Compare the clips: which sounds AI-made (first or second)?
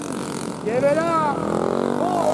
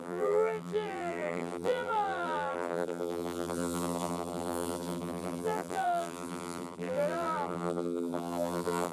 second